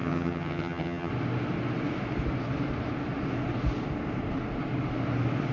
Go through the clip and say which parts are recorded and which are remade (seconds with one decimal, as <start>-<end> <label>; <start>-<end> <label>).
0.0-1.1 remade; 1.1-5.5 recorded